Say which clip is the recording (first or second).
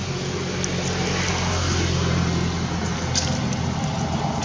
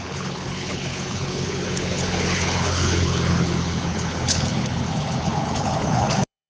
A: first